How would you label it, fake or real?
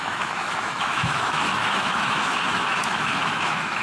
fake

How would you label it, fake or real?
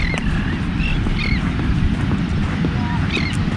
real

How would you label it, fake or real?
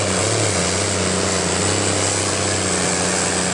real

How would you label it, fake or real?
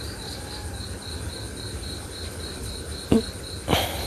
real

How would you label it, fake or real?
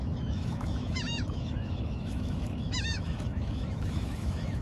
fake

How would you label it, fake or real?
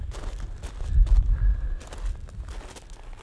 real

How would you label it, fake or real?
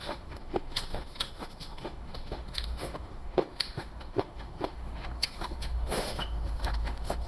fake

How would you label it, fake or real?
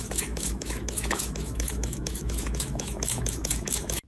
fake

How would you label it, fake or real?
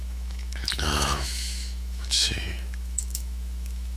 fake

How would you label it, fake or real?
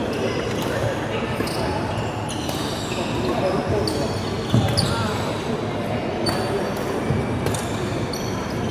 real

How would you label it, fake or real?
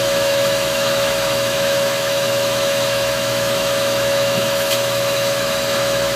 fake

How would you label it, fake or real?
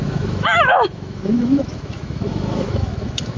fake